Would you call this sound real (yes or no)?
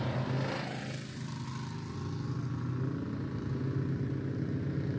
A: yes